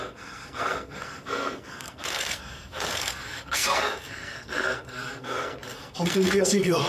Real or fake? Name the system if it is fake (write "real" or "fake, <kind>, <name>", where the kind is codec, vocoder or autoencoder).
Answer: fake, codec, SNAC